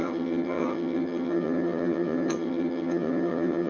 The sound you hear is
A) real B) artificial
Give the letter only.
B